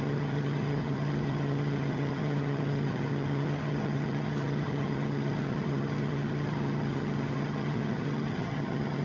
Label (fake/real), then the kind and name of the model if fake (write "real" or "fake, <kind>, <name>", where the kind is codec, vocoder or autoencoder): fake, vocoder, HiFi-GAN